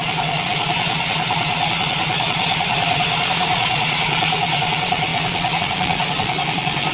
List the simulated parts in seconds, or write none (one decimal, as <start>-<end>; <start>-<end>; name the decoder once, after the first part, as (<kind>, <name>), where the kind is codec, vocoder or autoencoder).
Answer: 0.0-6.9 (vocoder, Vocos)